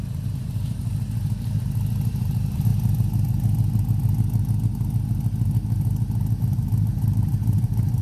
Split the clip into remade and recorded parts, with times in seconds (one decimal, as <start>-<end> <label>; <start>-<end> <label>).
0.0-0.8 remade; 0.8-2.1 recorded; 2.1-2.7 remade; 2.7-6.4 recorded; 6.4-8.0 remade